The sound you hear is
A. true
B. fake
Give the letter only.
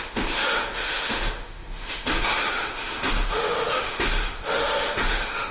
B